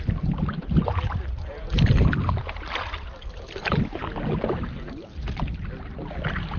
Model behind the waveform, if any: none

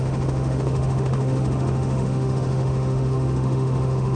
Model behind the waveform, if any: autoencoder, DAC-VAE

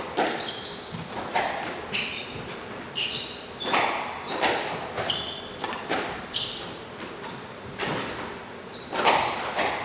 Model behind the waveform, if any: none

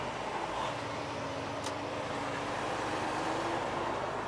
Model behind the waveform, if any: none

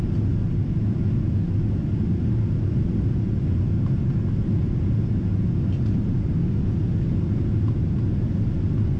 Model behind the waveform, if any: none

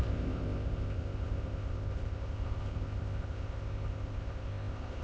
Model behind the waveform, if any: codec, ZipCodec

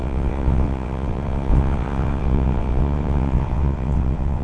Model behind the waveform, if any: vocoder, WaveNeXt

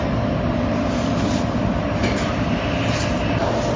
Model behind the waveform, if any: none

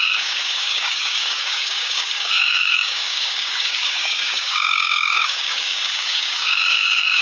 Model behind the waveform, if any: codec, DAC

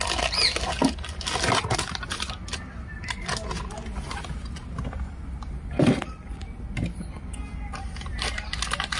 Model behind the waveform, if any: none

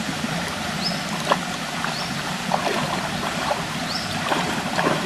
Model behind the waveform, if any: none